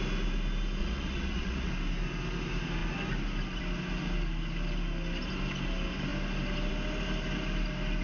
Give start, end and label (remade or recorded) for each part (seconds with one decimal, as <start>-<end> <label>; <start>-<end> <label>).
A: 0.0-0.8 recorded; 0.8-1.7 remade; 1.7-8.0 recorded